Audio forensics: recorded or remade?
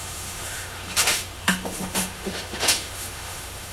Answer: remade